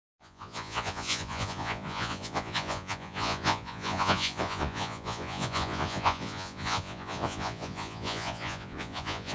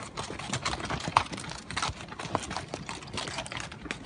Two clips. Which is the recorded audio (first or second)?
second